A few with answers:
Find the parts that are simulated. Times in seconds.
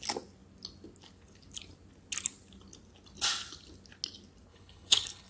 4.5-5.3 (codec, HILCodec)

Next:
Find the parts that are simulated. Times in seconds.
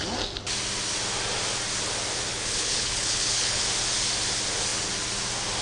2.3-3.6 (codec, HILCodec)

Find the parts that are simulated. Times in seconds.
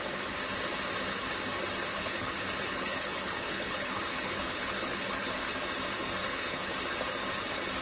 1.9-5.5 (codec, HILCodec); 6.2-6.7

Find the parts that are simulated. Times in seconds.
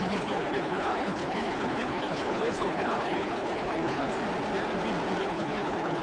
0.0-4.1 (codec, HILCodec); 5.2-6.0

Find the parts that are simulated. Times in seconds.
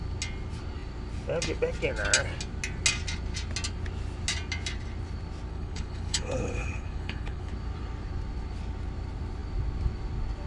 5.5-7.5 (codec, HILCodec)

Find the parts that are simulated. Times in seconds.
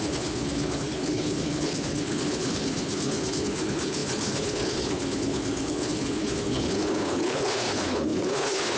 0.0-8.8 (codec, HILCodec)